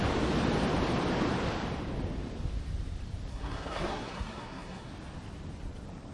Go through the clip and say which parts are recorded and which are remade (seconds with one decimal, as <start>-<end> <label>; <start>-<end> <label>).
0.0-3.3 recorded; 3.3-4.9 remade; 4.9-6.1 recorded